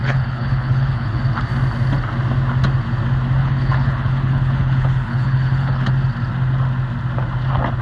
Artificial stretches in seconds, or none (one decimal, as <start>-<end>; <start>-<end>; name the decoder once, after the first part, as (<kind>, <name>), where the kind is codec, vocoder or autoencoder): 0.0-1.2 (codec, HILCodec); 3.4-5.9

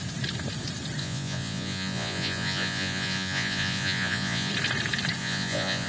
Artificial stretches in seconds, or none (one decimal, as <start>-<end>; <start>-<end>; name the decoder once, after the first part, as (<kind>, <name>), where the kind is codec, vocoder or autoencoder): 1.0-4.5 (vocoder, Vocos); 5.2-5.9

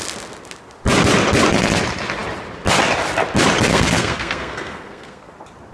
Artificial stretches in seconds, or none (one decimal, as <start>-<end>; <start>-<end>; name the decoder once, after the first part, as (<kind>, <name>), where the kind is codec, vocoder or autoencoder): 3.7-5.3 (codec, SNAC)